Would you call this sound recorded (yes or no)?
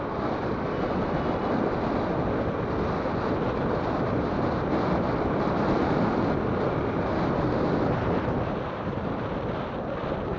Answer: yes